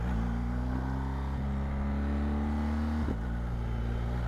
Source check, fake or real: real